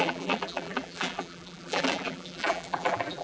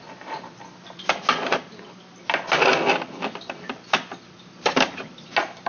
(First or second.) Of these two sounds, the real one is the second